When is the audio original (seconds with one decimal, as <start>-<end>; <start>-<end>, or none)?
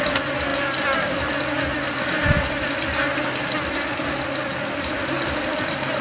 0.0-6.0